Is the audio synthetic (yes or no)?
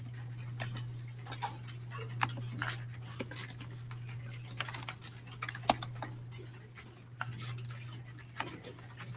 no